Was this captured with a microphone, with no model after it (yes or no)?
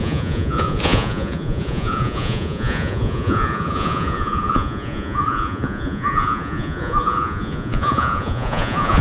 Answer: no